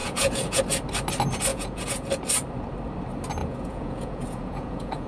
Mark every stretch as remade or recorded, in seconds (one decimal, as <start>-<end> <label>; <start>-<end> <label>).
0.0-0.6 remade; 0.6-1.5 recorded; 1.5-2.1 remade; 2.1-3.4 recorded; 3.4-5.1 remade